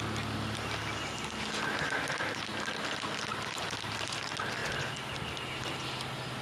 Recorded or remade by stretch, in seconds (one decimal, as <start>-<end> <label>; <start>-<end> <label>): 0.0-4.6 recorded; 4.6-5.1 remade; 5.1-6.4 recorded